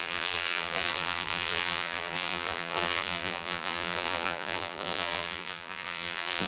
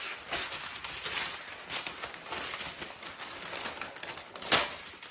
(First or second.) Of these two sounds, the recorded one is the second